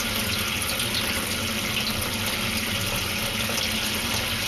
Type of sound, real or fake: real